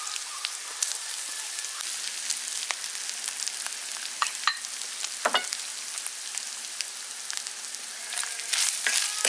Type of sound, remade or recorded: recorded